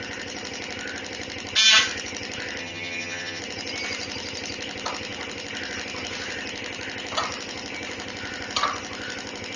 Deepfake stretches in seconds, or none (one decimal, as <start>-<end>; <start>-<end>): 2.6-3.4